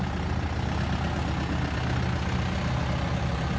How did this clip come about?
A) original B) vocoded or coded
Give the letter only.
A